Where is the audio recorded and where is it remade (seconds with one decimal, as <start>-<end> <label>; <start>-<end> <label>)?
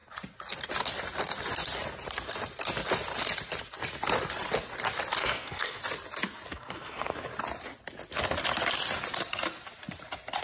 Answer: 0.0-5.2 recorded; 5.2-5.8 remade; 5.8-6.5 recorded; 6.5-7.3 remade; 7.3-10.4 recorded